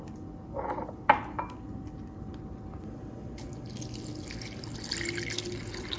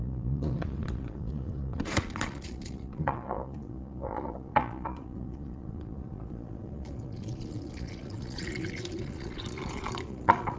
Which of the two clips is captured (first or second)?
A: first